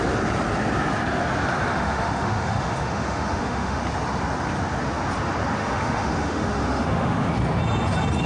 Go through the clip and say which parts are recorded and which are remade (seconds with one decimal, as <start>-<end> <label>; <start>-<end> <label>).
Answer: 0.0-1.7 recorded; 1.7-3.8 remade; 3.8-5.6 recorded; 5.6-7.3 remade; 7.3-8.3 recorded